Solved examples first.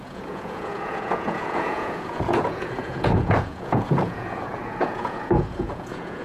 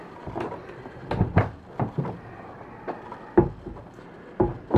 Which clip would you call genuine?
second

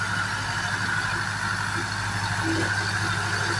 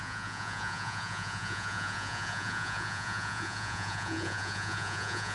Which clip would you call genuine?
first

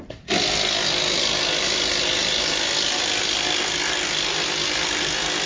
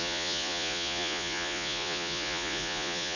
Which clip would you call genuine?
first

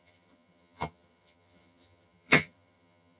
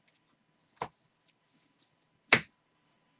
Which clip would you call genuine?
second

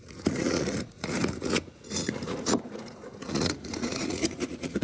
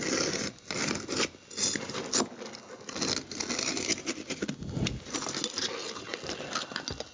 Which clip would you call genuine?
second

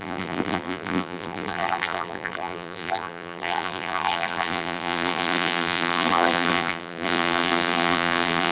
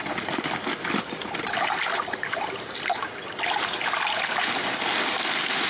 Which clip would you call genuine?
second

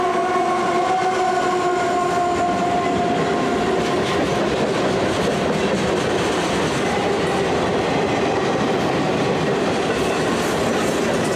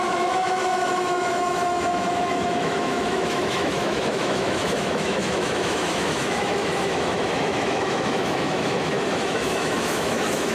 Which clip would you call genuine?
first